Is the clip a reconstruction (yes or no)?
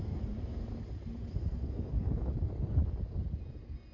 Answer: no